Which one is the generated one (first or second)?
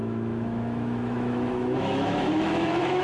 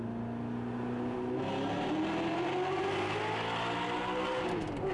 first